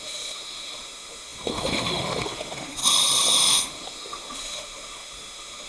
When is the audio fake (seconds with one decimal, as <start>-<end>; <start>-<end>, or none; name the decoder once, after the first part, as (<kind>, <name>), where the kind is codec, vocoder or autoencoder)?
0.0-2.8 (autoencoder, DAC-VAE); 3.5-5.7